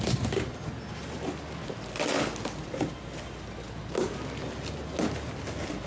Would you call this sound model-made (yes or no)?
no